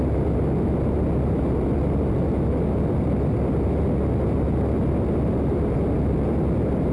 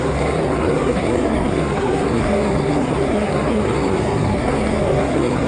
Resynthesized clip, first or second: second